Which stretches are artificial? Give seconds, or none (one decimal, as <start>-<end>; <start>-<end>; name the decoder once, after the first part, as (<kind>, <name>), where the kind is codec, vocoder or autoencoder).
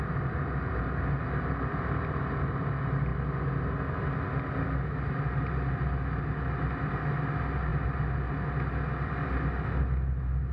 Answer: none